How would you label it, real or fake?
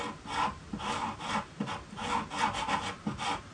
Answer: real